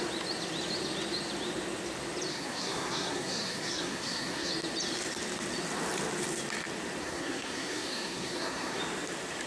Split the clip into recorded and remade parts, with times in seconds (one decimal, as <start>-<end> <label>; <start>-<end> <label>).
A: 0.0-2.3 recorded; 2.3-4.5 remade; 4.5-7.0 recorded; 7.0-8.8 remade; 8.8-9.5 recorded

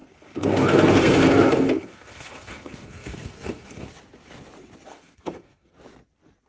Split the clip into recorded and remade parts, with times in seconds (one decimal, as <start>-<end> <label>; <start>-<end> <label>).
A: 0.0-3.9 remade; 3.9-4.9 recorded; 4.9-5.7 remade; 5.7-6.5 recorded

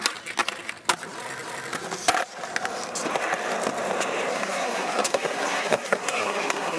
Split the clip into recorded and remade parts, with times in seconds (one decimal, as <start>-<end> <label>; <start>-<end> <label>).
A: 0.0-4.3 recorded; 4.3-6.8 remade